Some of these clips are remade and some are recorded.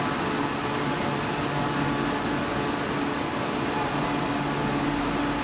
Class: recorded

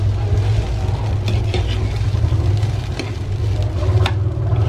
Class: recorded